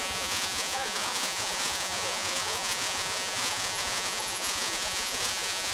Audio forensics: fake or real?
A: fake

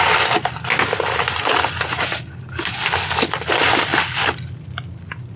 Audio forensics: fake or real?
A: real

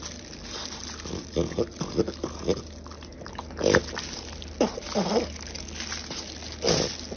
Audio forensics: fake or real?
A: real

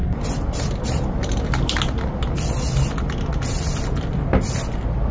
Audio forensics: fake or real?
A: real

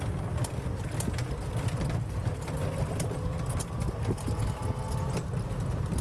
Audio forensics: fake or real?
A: real